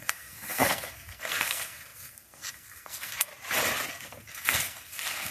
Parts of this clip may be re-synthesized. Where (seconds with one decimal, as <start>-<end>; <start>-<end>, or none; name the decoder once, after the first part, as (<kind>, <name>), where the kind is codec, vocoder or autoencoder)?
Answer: 0.0-3.3 (codec, SNAC); 3.9-5.3